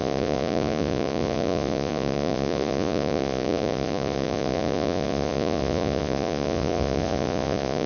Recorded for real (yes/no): no